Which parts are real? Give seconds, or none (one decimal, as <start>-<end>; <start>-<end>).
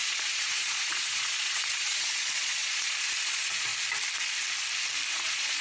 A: 3.7-5.1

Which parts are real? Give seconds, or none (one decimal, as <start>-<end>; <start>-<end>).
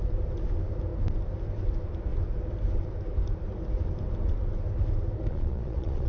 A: 0.0-5.3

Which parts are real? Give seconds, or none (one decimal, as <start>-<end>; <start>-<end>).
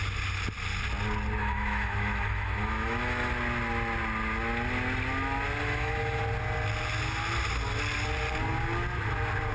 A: 0.0-1.4; 3.3-5.6; 6.2-9.5